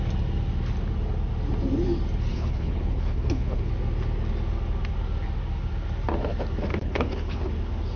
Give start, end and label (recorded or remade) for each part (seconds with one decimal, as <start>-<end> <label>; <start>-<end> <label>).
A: 0.0-2.3 recorded; 2.3-3.7 remade; 3.7-6.7 recorded; 6.7-7.5 remade; 7.5-8.0 recorded